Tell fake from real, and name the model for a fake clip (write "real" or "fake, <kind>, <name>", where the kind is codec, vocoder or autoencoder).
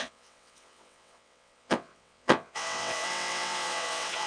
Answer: fake, vocoder, WaveNeXt